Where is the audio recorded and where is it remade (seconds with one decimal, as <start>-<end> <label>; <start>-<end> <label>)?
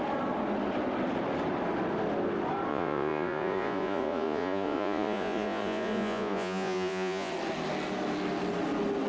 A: 0.0-2.7 recorded; 2.7-7.3 remade; 7.3-9.1 recorded